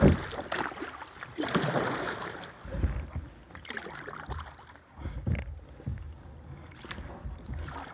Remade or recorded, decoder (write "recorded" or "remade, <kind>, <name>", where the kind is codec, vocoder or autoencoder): recorded